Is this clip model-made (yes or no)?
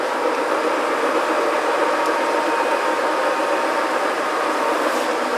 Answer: no